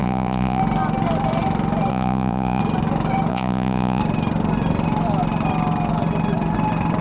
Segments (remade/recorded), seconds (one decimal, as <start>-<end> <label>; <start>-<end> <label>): 0.0-0.6 remade; 0.6-1.9 recorded; 1.9-2.6 remade; 2.6-3.3 recorded; 3.3-4.0 remade; 4.0-7.0 recorded